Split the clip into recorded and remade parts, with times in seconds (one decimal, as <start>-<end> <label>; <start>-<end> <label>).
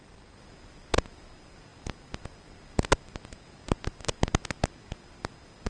0.0-5.7 recorded